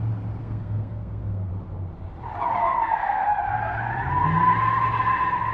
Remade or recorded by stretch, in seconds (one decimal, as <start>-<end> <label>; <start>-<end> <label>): 0.0-0.4 recorded; 0.4-1.5 remade; 1.5-2.6 recorded; 2.6-3.4 remade; 3.4-5.5 recorded